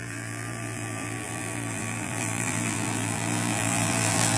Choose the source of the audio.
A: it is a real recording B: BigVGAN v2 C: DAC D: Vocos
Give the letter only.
B